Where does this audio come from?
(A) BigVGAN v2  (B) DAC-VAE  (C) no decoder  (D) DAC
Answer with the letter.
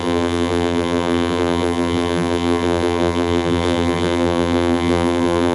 A